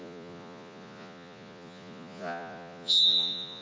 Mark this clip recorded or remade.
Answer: remade